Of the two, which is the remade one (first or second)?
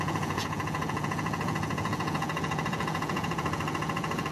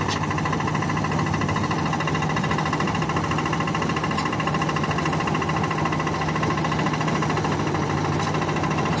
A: first